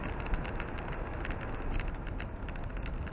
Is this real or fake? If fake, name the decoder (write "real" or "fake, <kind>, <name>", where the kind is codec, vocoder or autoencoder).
real